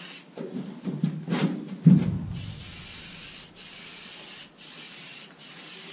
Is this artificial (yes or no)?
no